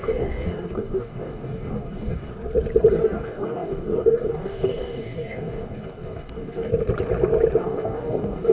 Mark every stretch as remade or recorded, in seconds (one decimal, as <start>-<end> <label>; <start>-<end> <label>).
0.0-2.3 remade; 2.3-2.9 recorded; 2.9-6.7 remade; 6.7-7.6 recorded; 7.6-8.5 remade